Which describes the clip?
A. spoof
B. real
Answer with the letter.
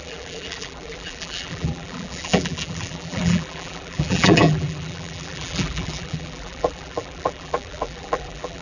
A